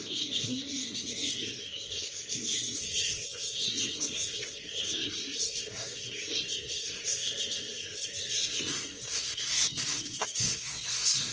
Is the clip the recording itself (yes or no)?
no